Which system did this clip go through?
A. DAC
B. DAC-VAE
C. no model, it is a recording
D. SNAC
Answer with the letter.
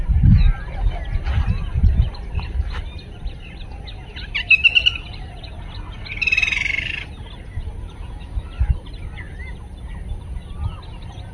C